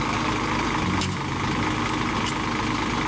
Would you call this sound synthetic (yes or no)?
no